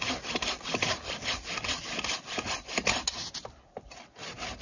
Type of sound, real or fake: real